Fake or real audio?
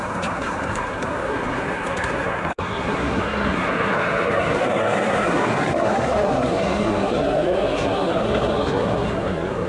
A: fake